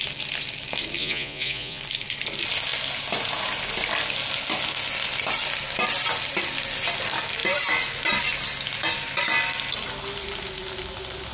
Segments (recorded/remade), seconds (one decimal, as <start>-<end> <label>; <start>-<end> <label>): 0.0-1.0 recorded; 1.0-1.8 remade; 1.8-11.3 recorded